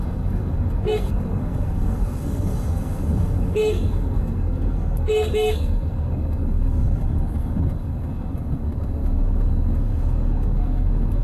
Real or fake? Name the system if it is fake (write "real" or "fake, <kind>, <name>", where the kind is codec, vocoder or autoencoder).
fake, codec, SNAC